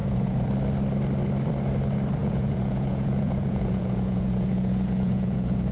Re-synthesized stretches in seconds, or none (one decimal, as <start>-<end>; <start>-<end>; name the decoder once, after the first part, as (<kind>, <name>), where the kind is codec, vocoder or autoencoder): 0.0-0.5 (vocoder, Vocos); 2.2-5.7